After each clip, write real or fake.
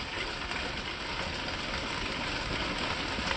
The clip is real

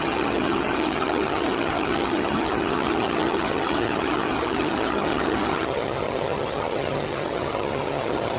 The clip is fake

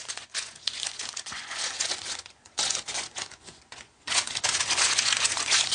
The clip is fake